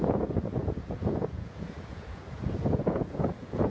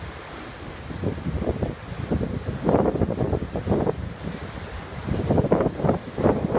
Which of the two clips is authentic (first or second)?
second